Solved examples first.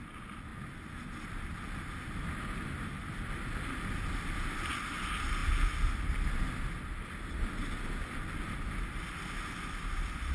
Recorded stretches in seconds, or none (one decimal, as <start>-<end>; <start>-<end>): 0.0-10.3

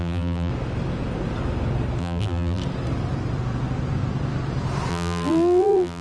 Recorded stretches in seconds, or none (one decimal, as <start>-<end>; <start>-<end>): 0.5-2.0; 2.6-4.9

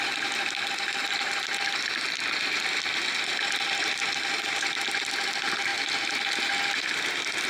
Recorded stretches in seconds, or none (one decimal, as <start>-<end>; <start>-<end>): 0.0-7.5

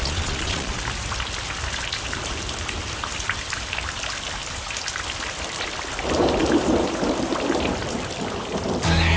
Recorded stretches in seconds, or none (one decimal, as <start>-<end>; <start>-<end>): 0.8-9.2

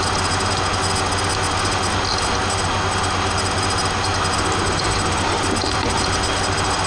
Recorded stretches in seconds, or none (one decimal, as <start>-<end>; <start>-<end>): 0.0-6.9

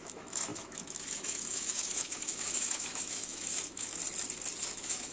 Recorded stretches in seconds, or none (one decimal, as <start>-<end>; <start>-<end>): 4.0-4.6

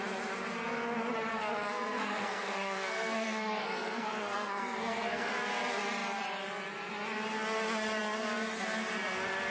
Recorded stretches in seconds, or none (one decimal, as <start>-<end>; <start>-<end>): 0.0-1.3; 5.3-9.5

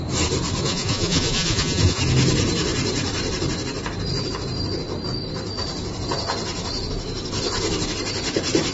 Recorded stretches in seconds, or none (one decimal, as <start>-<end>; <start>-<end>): 0.0-0.6; 2.0-8.7